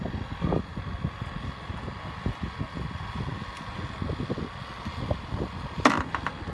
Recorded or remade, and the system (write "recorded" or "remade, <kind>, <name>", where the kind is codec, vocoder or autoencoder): recorded